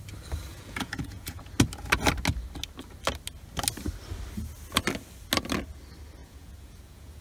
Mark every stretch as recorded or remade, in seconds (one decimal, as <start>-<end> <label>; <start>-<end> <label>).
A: 0.0-0.5 recorded; 0.5-1.4 remade; 1.4-6.2 recorded; 6.2-7.2 remade